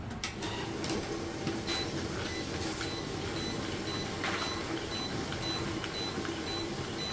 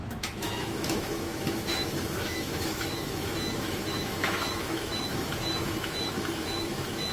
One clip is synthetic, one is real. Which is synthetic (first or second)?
second